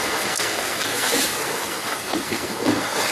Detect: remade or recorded remade